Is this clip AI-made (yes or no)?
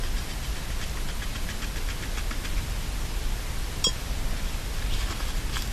no